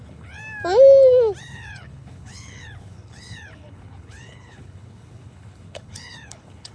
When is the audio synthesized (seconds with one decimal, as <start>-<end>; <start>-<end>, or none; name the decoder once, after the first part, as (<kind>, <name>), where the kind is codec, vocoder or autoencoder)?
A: 0.0-0.4 (codec, HILCodec); 1.4-6.7